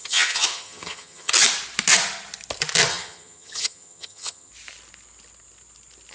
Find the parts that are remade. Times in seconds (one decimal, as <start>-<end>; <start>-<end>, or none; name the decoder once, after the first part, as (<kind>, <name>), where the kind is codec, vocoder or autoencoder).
0.0-1.3 (vocoder, HiFi-GAN); 2.9-4.5